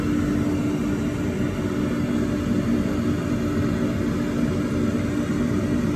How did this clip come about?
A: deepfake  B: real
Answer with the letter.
B